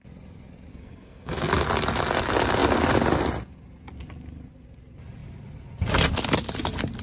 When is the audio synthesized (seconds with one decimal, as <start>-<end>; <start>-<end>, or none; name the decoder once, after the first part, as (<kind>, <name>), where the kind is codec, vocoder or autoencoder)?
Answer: 0.7-1.5 (codec, SNAC)